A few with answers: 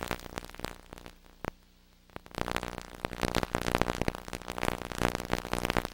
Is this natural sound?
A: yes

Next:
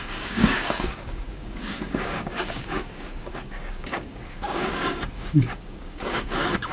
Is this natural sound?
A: no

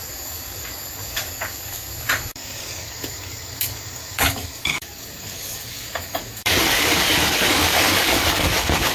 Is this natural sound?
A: no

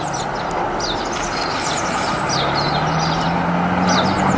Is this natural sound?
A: yes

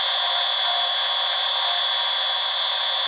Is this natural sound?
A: yes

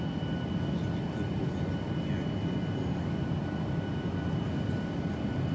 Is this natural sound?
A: yes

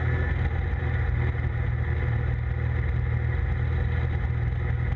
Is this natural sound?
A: yes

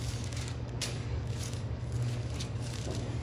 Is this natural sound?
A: no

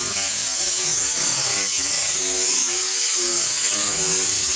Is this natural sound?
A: no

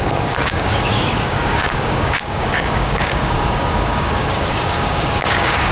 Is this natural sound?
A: no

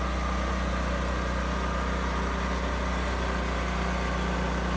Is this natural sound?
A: yes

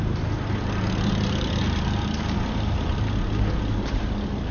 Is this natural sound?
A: yes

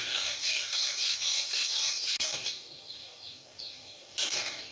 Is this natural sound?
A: no